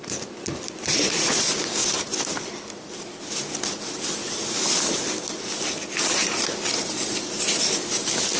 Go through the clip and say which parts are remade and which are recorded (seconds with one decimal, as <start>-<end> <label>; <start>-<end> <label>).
0.0-0.9 recorded; 0.9-1.4 remade; 1.4-8.4 recorded